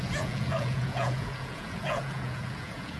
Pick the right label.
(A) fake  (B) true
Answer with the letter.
A